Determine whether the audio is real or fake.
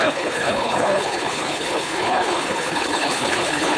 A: fake